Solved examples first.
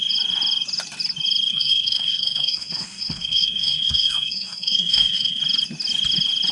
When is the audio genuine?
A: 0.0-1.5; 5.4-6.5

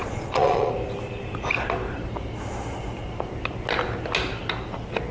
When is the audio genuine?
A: 0.7-5.1

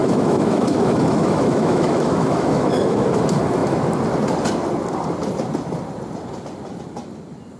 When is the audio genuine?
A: 3.2-7.6

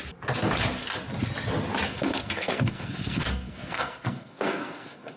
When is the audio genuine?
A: 0.0-1.9

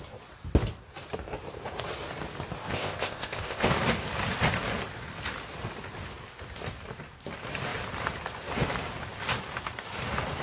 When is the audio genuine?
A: 0.0-2.6; 3.7-10.4

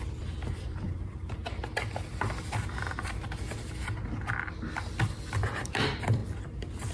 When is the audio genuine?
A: 1.4-5.5; 6.2-6.9

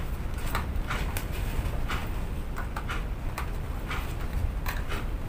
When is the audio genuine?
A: 0.0-5.3

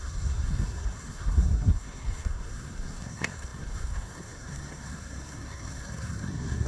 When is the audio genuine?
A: none